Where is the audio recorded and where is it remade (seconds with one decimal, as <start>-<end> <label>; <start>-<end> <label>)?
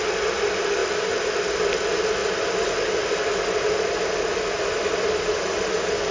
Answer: 0.0-6.1 recorded